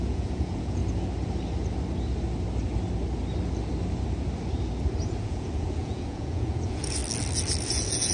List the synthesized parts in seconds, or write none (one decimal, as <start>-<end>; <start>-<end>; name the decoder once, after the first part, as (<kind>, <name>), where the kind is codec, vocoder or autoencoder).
0.0-0.8 (vocoder, Vocos); 5.2-7.0; 7.6-8.1